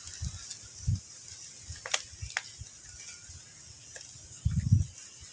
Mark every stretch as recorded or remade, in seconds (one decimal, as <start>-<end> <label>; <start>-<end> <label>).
0.0-5.3 recorded